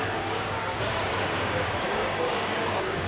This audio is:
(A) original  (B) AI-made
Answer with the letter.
B